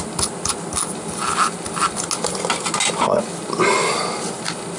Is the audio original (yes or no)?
yes